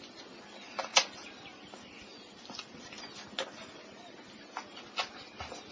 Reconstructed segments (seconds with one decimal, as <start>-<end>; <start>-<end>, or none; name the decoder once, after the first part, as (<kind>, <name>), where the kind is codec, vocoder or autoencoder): none

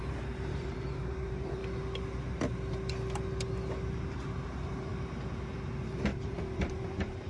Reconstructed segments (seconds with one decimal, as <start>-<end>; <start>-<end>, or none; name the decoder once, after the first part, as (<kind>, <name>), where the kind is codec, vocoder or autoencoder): 0.0-1.6 (vocoder, BigVGAN v2); 4.0-4.9; 6.2-7.3

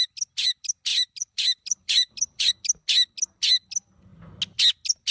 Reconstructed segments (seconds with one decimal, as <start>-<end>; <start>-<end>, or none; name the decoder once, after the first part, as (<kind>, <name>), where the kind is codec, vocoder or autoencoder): 0.9-2.5 (vocoder, BigVGAN v2)

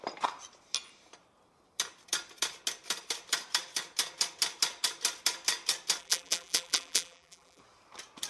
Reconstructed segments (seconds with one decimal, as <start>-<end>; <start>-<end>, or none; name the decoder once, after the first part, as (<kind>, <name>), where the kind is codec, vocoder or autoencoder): 6.0-7.6 (vocoder, BigVGAN v2)

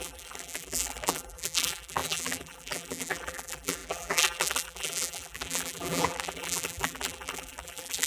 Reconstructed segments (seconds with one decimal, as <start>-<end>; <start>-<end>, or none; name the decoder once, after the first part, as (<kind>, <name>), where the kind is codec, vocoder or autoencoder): 0.0-8.1 (vocoder, BigVGAN v2)

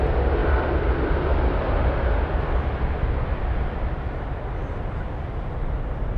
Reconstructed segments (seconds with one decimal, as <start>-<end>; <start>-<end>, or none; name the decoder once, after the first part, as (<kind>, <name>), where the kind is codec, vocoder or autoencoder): none